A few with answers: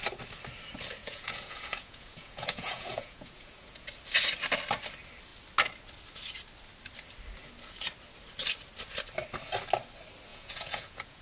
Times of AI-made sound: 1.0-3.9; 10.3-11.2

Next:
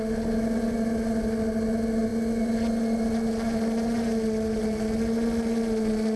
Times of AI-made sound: none

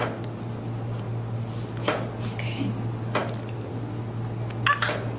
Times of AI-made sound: none

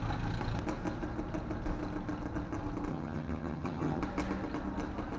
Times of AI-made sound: 2.9-4.0